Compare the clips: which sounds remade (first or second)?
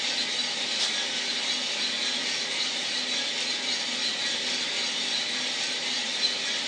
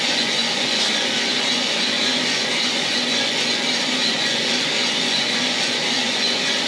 second